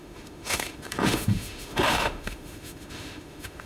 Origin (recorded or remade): remade